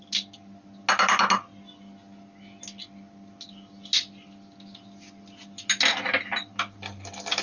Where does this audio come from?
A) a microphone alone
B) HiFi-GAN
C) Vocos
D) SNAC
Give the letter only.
A